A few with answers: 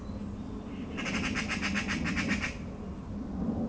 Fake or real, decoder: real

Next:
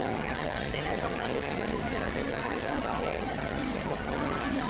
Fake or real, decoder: fake, vocoder, HiFi-GAN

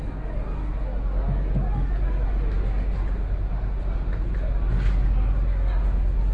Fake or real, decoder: real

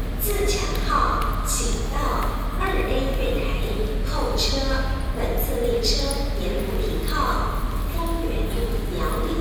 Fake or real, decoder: real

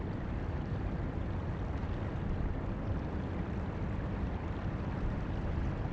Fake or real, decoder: real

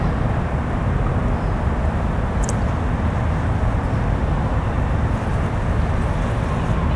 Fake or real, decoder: real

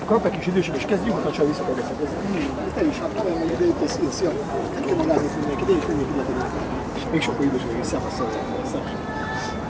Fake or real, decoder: real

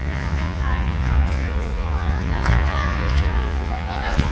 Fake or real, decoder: fake, vocoder, Vocos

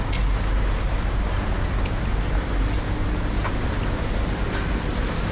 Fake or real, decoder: real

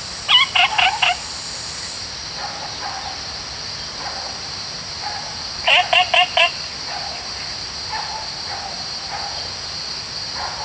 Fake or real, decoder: real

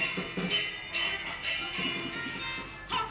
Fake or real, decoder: real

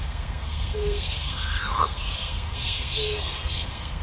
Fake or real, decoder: fake, codec, SNAC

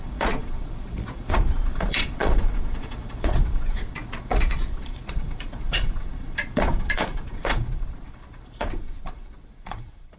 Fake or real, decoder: fake, vocoder, Vocos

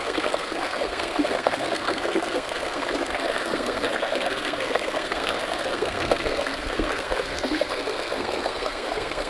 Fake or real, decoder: fake, codec, SNAC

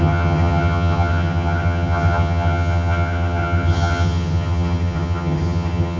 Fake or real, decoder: fake, vocoder, HiFi-GAN